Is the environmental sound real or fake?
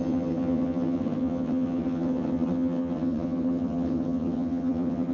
fake